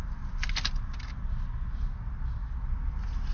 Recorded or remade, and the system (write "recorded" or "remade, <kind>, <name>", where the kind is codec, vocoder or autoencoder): recorded